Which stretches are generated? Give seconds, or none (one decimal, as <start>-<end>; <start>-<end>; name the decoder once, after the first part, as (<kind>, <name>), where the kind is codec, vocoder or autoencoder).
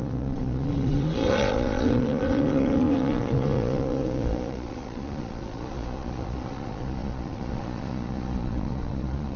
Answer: 0.0-9.4 (vocoder, Vocos)